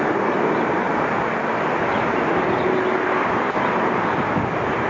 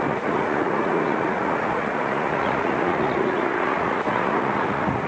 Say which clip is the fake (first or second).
second